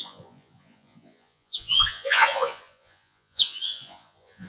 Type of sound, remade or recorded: remade